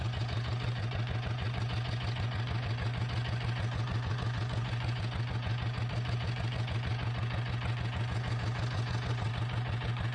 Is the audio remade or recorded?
remade